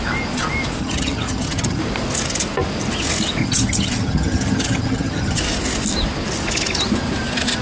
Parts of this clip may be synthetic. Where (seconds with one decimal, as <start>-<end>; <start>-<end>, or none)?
0.8-1.8; 3.4-5.4